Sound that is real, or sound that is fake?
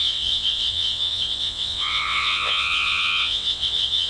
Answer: fake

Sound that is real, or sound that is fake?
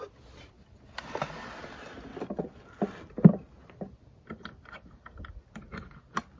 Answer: real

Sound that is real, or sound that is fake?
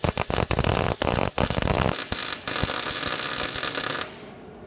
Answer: real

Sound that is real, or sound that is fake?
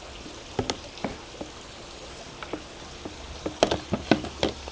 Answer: real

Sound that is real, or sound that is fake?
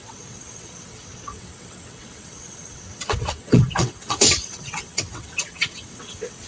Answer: fake